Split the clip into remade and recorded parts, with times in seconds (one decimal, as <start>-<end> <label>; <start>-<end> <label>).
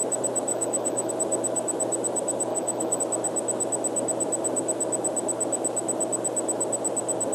0.0-0.5 recorded; 0.5-1.1 remade; 1.1-2.5 recorded; 2.5-3.0 remade; 3.0-7.3 recorded